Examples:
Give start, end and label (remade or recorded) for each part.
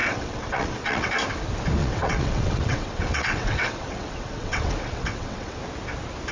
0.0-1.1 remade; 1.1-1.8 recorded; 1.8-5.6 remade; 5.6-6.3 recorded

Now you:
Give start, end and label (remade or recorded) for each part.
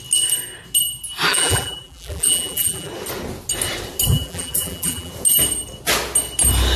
0.0-1.3 recorded; 1.3-2.9 remade; 2.9-4.1 recorded; 4.1-5.1 remade; 5.1-6.8 recorded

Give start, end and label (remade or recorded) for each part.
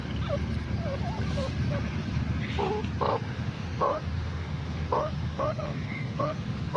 0.0-3.1 recorded; 3.1-6.8 remade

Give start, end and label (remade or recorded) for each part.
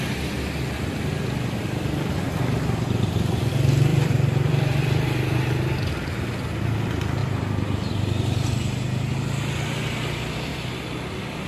0.0-3.9 recorded; 3.9-5.9 remade; 5.9-11.5 recorded